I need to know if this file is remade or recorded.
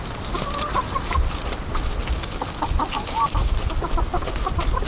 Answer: recorded